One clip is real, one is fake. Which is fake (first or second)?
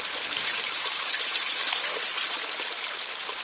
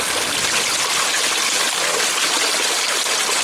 first